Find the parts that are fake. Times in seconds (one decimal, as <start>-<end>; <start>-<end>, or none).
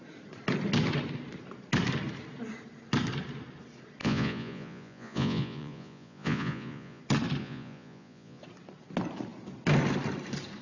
4.0-7.0; 7.4-8.4